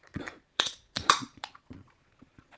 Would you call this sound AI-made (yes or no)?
yes